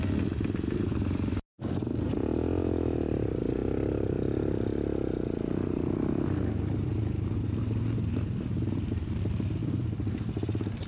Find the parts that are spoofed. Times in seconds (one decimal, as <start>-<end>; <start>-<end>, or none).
none